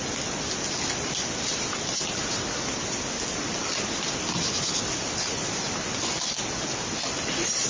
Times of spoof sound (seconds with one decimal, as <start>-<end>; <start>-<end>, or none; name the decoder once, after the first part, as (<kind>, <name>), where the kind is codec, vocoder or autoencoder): none